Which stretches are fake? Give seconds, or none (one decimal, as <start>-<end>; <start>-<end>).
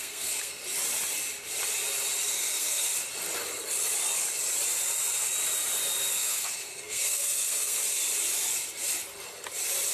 0.0-0.6; 2.3-2.9; 6.1-7.8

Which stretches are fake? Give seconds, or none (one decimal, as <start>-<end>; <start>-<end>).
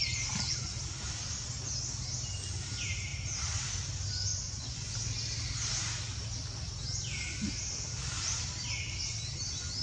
4.3-4.9